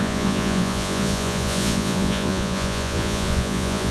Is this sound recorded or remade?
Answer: remade